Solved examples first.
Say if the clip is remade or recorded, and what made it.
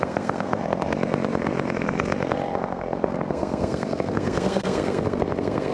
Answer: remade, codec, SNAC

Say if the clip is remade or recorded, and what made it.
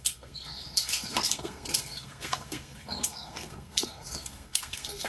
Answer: remade, codec, SNAC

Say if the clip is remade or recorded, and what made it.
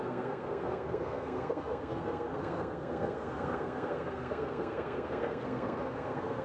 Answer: remade, codec, SNAC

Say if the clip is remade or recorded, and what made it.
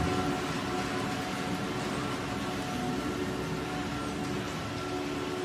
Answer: recorded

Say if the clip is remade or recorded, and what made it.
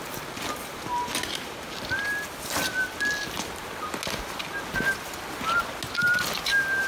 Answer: recorded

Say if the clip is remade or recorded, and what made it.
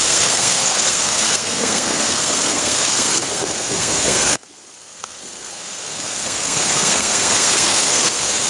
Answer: remade, codec, SNAC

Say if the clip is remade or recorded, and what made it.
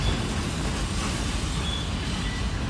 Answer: recorded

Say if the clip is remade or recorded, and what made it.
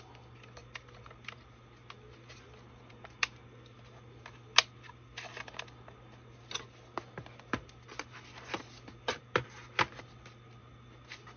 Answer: recorded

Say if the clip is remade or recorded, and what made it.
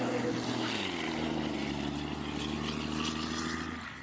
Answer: recorded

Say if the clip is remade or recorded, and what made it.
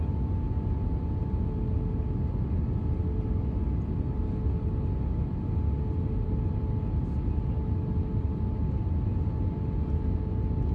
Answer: recorded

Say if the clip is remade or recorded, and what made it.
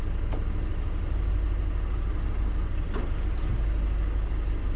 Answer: recorded